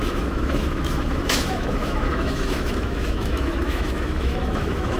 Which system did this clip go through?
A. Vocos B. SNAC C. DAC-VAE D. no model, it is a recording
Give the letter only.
C